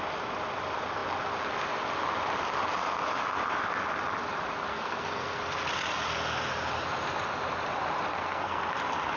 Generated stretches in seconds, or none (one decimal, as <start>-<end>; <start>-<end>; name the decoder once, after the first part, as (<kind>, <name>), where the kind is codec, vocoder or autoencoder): 4.7-5.4 (codec, SNAC); 8.1-8.6